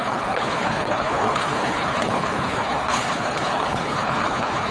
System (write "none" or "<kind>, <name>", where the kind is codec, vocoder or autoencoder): codec, HILCodec